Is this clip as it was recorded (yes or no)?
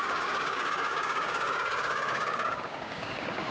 no